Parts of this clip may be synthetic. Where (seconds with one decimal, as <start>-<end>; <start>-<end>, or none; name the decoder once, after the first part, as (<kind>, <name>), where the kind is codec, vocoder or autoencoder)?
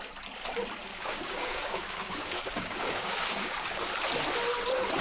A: 0.9-3.9 (codec, DAC)